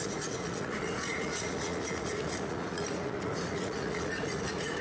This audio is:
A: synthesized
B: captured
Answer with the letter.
A